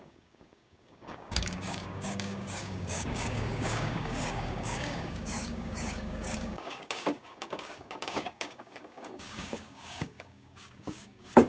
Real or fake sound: fake